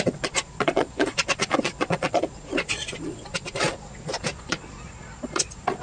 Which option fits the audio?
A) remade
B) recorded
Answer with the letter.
A